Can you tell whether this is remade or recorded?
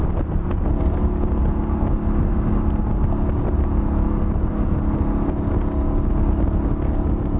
recorded